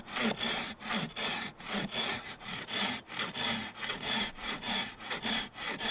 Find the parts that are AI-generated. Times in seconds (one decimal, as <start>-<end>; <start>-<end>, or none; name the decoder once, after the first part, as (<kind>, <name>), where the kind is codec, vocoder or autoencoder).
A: 1.2-2.9 (vocoder, Vocos); 3.6-5.2